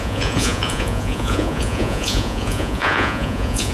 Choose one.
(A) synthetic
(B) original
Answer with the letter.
A